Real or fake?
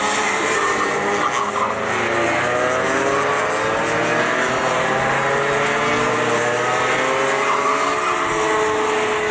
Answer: real